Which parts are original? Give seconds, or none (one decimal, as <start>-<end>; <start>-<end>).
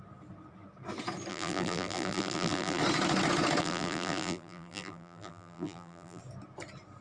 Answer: 0.0-1.3; 2.8-3.6; 6.2-7.0